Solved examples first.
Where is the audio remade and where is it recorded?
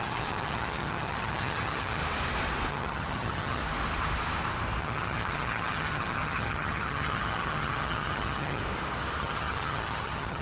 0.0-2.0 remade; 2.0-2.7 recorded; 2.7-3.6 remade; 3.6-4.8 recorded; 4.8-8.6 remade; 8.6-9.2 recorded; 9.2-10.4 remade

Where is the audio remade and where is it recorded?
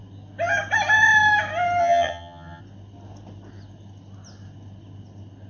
0.0-1.8 recorded; 1.8-2.6 remade; 2.6-5.5 recorded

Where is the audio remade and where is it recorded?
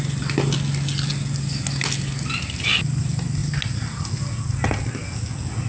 0.0-5.7 recorded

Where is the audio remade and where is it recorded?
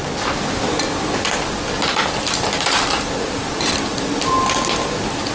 0.0-5.3 recorded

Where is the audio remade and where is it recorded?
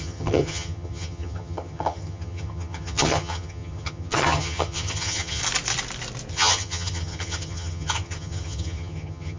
0.0-5.4 remade; 5.4-6.3 recorded; 6.3-9.4 remade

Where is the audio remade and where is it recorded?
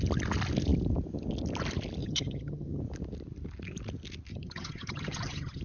0.0-2.0 recorded; 2.0-2.8 remade; 2.8-4.3 recorded; 4.3-5.6 remade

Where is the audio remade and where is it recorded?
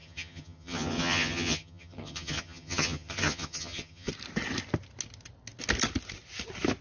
0.0-4.1 remade; 4.1-6.8 recorded